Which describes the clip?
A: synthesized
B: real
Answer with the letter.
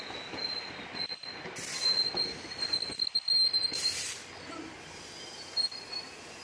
B